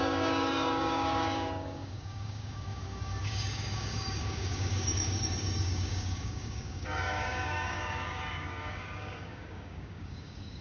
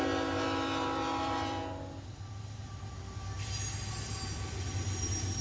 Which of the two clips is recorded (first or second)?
second